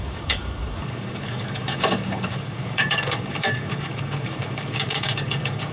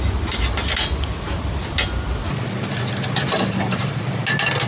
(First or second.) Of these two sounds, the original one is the second